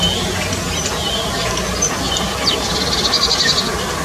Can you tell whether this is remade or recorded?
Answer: recorded